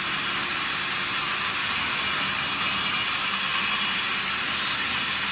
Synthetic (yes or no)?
no